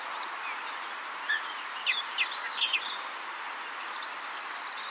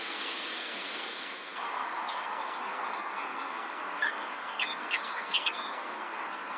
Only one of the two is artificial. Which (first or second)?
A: second